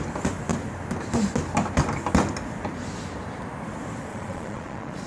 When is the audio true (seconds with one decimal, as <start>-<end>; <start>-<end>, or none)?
0.0-4.1